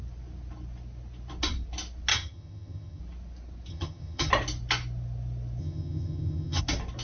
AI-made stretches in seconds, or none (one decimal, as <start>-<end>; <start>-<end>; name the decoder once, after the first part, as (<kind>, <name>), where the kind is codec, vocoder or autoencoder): 2.1-3.0 (vocoder, HiFi-GAN); 3.7-4.3; 5.6-6.6